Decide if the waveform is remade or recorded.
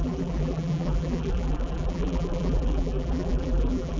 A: remade